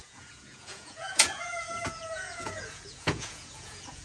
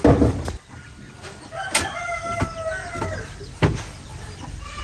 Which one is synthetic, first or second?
first